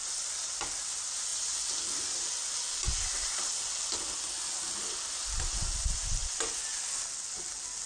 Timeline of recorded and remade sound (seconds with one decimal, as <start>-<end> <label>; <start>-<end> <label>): 0.0-0.5 remade; 0.5-7.9 recorded